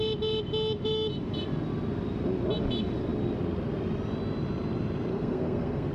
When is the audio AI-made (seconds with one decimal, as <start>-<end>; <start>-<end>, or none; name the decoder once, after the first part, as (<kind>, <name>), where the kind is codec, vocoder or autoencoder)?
5.1-5.9 (codec, SNAC)